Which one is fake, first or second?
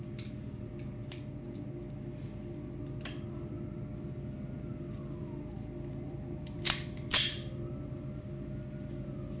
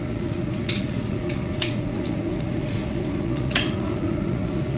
second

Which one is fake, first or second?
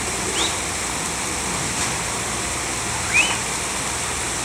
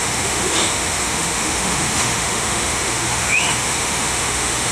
second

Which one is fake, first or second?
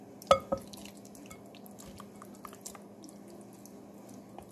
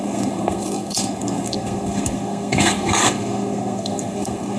second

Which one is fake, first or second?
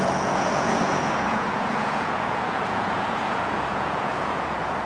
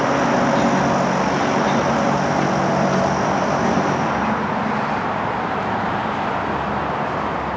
first